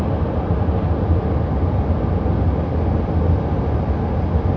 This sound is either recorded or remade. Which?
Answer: recorded